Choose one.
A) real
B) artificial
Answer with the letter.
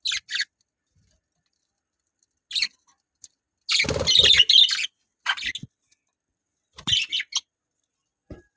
A